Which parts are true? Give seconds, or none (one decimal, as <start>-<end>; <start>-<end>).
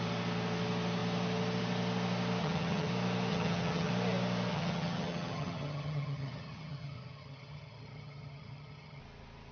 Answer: 0.0-2.4; 2.9-3.3; 3.9-4.5; 9.0-9.5